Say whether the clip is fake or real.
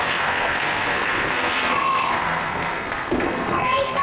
fake